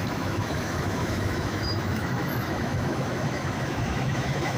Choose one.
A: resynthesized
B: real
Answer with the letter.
A